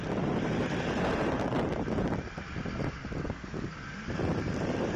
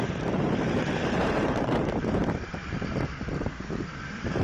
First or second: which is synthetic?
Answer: second